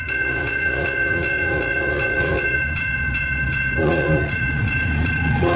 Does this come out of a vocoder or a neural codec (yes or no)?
yes